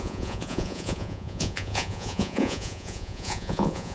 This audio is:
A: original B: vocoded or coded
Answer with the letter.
B